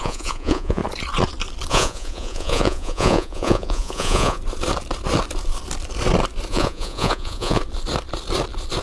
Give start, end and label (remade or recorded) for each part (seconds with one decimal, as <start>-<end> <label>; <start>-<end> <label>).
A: 0.0-0.8 remade; 0.8-1.7 recorded; 1.7-4.4 remade; 4.4-6.5 recorded; 6.5-7.6 remade; 7.6-8.8 recorded

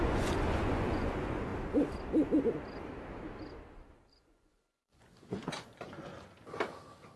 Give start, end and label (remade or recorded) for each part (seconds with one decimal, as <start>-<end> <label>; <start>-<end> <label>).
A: 0.0-1.5 remade; 1.5-4.1 recorded; 4.1-6.1 remade; 6.1-7.2 recorded

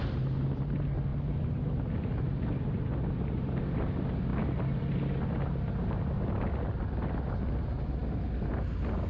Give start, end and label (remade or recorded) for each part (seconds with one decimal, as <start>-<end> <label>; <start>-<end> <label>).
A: 0.0-9.1 recorded